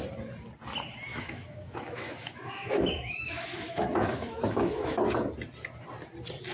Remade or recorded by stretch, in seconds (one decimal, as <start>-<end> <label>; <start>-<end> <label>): 0.0-1.1 recorded; 1.1-5.0 remade; 5.0-6.5 recorded